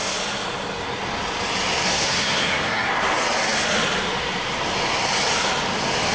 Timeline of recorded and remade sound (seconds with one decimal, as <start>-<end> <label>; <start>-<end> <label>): 0.0-1.9 recorded; 1.9-2.9 remade; 2.9-6.1 recorded